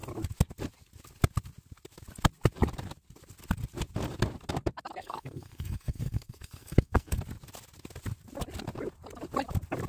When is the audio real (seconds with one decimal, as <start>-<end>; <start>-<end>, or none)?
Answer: 0.0-5.0; 7.2-9.9